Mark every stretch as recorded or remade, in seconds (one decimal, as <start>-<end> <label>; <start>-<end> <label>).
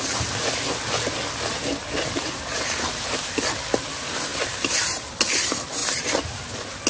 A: 0.0-6.9 recorded